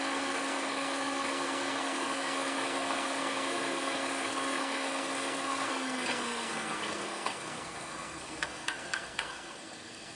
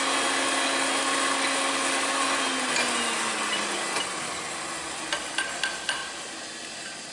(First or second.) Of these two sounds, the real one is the second